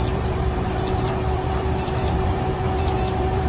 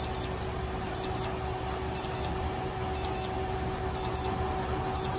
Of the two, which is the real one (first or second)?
second